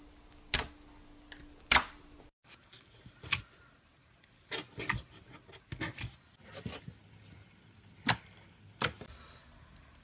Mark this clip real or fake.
real